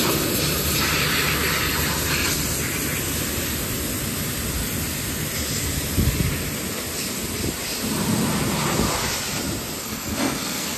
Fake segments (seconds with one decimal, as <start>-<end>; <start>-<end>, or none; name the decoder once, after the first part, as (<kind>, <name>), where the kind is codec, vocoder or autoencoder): 9.8-10.8 (codec, SNAC)